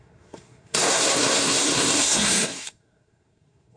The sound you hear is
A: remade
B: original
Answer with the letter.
A